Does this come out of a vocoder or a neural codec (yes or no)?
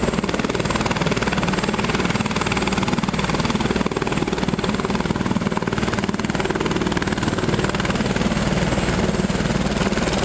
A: no